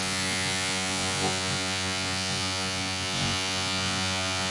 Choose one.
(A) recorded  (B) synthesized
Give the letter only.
B